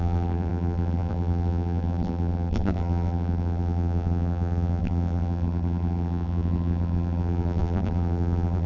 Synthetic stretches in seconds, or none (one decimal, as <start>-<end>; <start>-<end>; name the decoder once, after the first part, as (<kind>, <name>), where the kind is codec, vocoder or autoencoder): 0.0-8.7 (vocoder, BigVGAN v2)